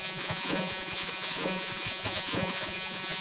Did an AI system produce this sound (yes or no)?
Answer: yes